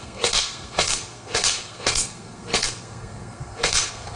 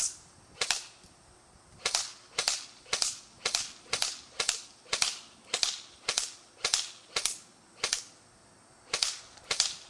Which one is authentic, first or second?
second